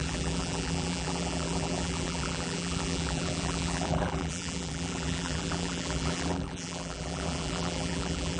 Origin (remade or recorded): remade